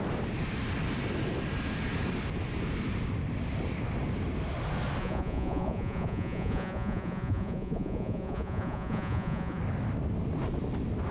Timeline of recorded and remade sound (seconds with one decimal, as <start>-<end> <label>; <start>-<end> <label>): 0.0-5.0 recorded; 5.0-9.6 remade; 9.6-11.1 recorded